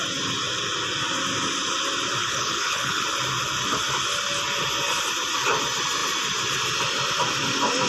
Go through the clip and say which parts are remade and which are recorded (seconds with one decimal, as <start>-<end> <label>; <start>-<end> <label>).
0.0-2.2 recorded; 2.2-3.0 remade; 3.0-7.9 recorded